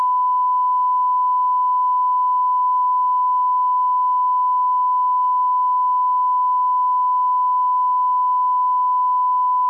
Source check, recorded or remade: remade